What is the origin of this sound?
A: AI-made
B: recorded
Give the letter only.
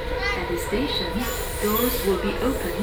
B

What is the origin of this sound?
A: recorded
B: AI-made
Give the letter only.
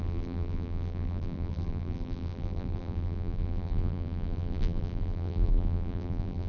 B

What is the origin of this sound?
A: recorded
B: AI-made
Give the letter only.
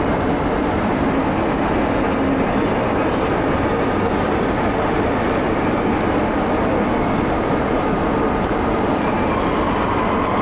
A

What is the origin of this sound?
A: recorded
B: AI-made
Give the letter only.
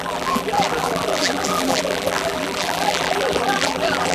B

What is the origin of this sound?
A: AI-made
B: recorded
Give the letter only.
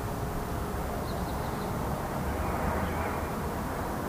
B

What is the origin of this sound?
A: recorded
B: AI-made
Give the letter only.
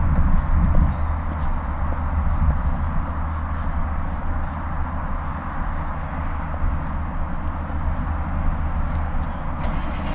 A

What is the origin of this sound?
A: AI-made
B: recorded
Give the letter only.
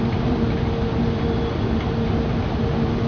B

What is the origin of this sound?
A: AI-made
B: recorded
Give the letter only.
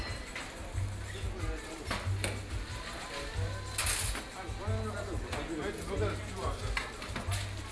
B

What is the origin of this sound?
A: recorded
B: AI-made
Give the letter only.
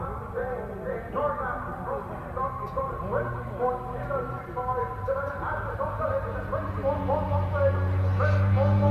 A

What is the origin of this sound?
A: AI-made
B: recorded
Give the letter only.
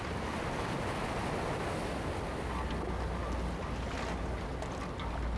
B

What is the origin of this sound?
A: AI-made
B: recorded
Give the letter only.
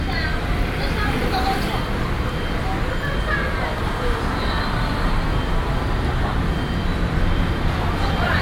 A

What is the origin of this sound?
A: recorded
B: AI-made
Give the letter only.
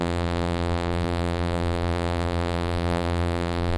B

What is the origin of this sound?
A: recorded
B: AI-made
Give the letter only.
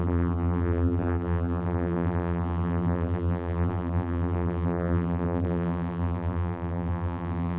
B